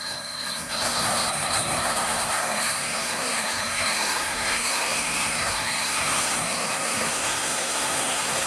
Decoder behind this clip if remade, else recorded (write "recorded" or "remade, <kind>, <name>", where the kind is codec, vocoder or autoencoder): remade, codec, SNAC